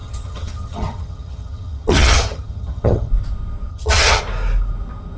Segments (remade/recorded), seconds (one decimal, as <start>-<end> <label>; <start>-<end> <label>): 0.0-3.1 remade; 3.1-3.7 recorded; 3.7-4.2 remade; 4.2-5.2 recorded